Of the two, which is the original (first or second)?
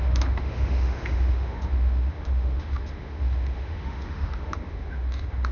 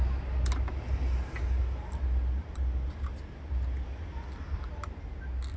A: second